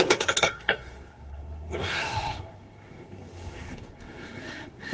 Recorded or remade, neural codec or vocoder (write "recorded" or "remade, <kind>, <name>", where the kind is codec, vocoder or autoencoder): remade, codec, SNAC